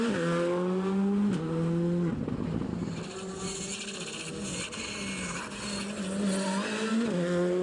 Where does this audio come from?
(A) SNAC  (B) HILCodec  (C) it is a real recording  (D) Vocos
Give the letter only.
C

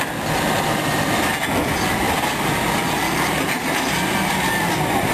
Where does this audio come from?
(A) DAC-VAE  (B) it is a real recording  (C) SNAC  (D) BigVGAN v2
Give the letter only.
B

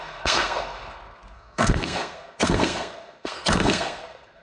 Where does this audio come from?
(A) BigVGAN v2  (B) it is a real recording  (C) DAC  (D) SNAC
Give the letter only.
D